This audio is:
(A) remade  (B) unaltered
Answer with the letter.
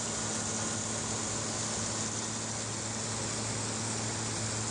B